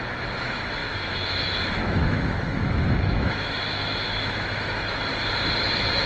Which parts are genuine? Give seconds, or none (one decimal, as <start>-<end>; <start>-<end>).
5.1-5.6